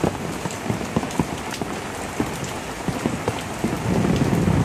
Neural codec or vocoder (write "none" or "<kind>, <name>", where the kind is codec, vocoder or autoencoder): vocoder, BigVGAN v2